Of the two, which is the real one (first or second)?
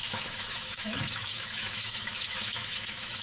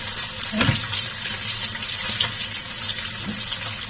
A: second